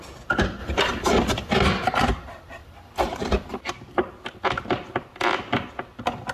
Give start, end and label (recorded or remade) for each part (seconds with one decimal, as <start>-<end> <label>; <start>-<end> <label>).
0.0-0.6 recorded; 0.6-1.6 remade; 1.6-2.6 recorded; 2.6-3.6 remade; 3.6-6.3 recorded